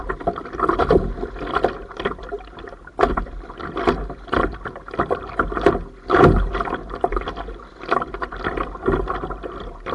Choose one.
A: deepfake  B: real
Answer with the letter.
B